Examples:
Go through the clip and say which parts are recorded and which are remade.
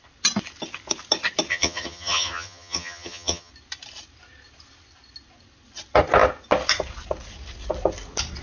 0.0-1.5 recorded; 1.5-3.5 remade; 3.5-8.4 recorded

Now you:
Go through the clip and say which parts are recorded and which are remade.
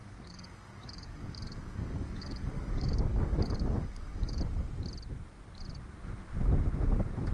0.0-4.4 remade; 4.4-7.3 recorded